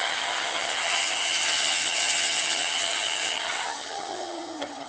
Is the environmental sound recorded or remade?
remade